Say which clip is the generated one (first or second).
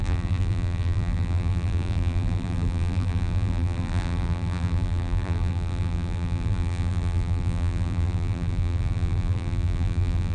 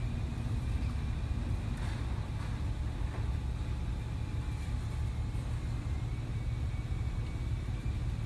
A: first